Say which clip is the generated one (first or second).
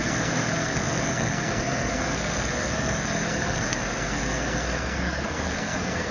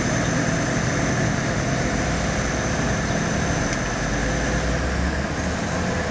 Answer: first